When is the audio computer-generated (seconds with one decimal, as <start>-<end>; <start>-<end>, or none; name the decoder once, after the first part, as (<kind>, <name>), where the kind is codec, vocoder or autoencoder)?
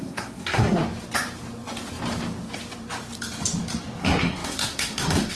0.0-0.8 (codec, SNAC); 4.0-5.3